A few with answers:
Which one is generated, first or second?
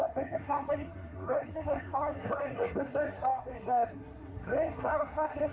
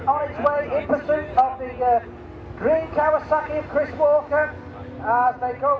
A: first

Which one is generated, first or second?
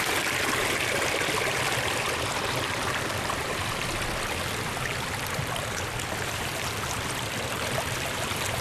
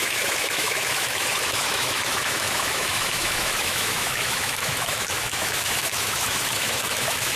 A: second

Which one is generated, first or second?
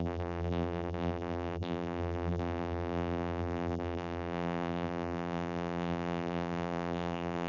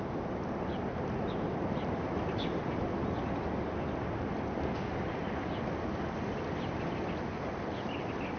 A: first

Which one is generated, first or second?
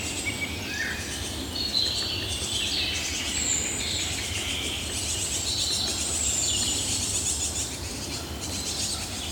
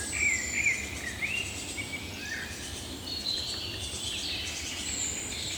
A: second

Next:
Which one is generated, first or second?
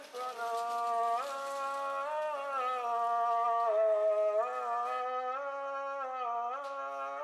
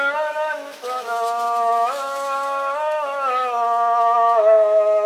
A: second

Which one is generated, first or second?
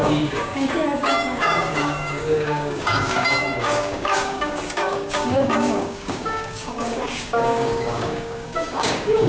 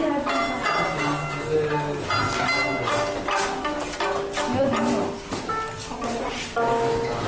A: first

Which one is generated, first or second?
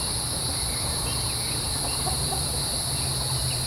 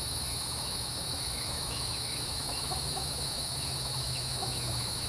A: second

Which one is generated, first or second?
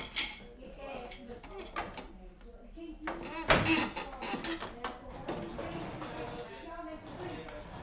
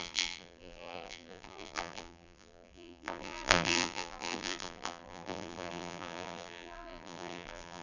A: second